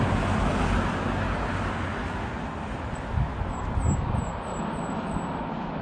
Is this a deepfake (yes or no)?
no